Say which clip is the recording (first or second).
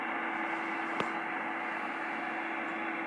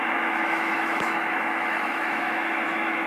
first